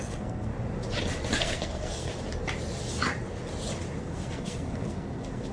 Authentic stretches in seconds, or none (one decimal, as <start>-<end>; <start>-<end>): 0.5-1.4; 2.1-4.0